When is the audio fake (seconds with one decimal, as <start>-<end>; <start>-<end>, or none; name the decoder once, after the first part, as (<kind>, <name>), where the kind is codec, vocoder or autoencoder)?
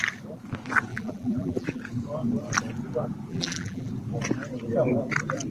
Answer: 0.9-1.8 (vocoder, BigVGAN v2); 3.3-3.9